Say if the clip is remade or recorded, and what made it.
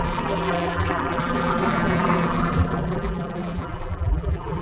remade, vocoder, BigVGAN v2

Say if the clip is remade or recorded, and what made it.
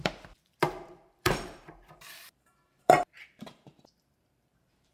remade, vocoder, BigVGAN v2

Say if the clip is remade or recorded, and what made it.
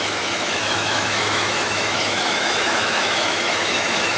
remade, autoencoder, DAC-VAE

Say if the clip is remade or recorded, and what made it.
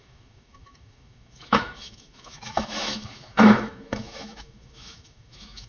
remade, autoencoder, DAC-VAE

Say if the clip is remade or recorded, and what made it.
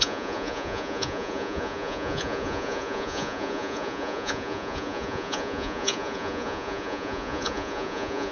remade, vocoder, Vocos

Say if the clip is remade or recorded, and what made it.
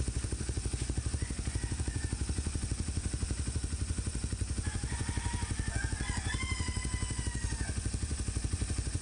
remade, vocoder, Vocos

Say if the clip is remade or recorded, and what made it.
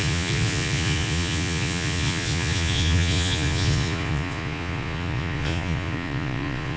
remade, vocoder, Vocos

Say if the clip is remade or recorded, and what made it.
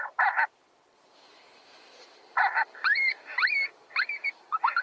remade, vocoder, BigVGAN v2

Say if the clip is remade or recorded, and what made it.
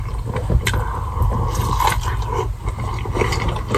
recorded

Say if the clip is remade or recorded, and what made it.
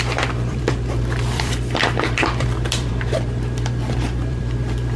remade, vocoder, BigVGAN v2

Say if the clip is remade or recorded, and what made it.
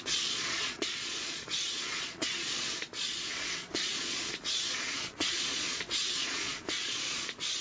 remade, vocoder, Vocos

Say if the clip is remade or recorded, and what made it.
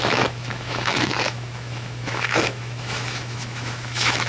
remade, autoencoder, DAC-VAE